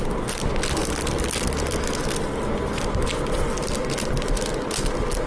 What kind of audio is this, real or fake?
real